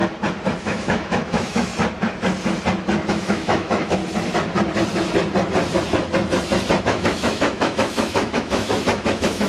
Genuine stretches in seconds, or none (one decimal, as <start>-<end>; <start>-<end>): 0.0-0.6; 1.7-3.1; 4.0-6.8